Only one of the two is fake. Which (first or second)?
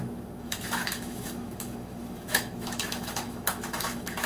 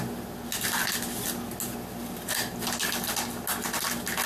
first